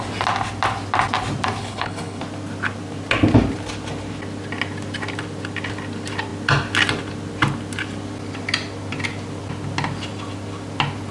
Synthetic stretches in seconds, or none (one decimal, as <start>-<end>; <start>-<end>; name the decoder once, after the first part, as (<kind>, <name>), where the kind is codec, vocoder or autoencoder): 1.6-2.2 (codec, HILCodec)